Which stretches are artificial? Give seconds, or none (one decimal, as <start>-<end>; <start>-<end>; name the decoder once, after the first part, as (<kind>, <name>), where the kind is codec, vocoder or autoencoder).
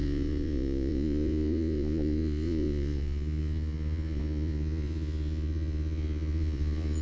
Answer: 0.0-7.0 (vocoder, Vocos)